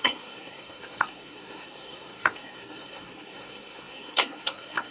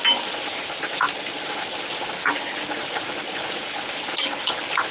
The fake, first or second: first